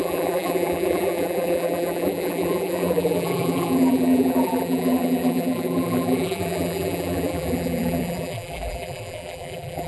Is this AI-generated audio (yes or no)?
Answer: yes